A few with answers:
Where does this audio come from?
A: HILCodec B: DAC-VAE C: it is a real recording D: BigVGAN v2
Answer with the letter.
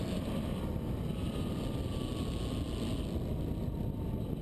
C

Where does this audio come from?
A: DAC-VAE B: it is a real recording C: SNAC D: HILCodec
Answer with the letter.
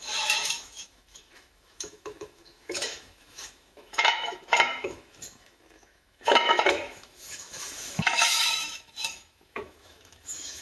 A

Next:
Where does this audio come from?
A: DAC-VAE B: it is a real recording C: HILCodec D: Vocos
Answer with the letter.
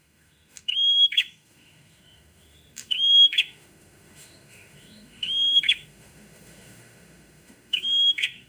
A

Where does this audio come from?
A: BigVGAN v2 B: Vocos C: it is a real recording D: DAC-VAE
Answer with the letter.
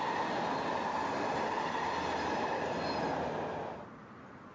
C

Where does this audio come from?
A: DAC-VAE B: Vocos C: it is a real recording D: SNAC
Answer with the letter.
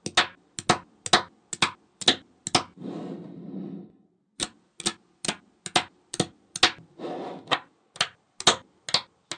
C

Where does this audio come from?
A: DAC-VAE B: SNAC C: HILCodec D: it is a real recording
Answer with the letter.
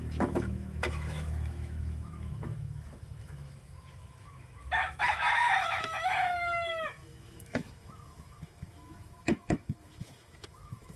A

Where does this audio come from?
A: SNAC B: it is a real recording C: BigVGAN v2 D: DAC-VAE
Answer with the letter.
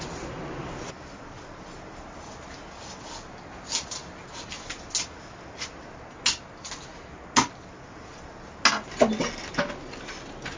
B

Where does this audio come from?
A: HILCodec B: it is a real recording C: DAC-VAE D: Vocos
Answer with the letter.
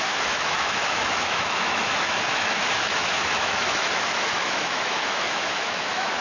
C